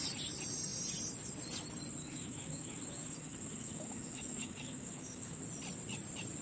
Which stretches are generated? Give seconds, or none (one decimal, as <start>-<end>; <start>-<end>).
2.0-5.4